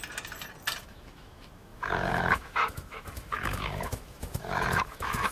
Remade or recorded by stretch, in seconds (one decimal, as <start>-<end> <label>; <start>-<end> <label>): 0.0-0.8 recorded; 0.8-5.3 remade